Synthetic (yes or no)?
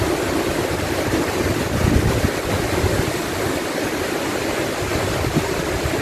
yes